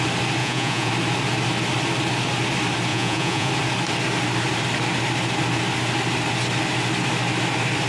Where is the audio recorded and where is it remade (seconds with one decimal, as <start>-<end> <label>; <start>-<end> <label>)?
0.0-0.4 recorded; 0.4-0.9 remade; 0.9-2.9 recorded; 2.9-3.5 remade; 3.5-7.9 recorded